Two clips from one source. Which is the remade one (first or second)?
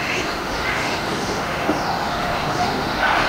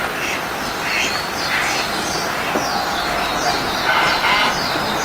first